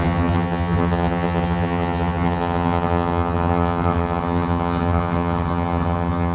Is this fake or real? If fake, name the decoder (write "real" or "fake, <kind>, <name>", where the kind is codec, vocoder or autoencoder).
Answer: fake, vocoder, HiFi-GAN